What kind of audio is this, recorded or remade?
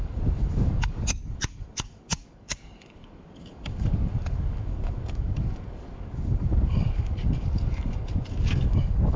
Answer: remade